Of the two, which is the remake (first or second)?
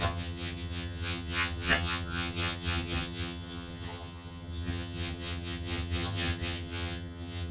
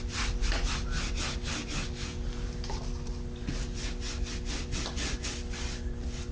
first